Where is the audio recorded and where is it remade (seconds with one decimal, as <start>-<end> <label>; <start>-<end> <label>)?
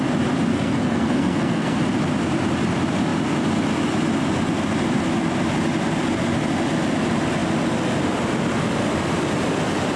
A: 0.0-0.5 recorded; 0.5-1.8 remade; 1.8-10.0 recorded